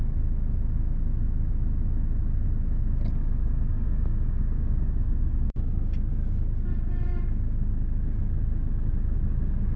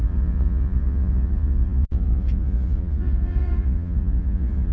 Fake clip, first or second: second